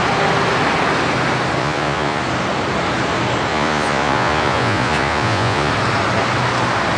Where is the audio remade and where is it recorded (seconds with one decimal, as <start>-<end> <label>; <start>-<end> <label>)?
0.0-1.6 recorded; 1.6-2.2 remade; 2.2-3.5 recorded; 3.5-5.7 remade; 5.7-7.0 recorded